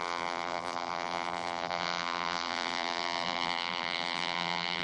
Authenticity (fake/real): fake